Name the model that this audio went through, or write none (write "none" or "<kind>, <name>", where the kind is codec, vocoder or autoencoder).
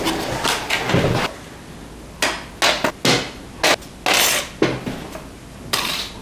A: none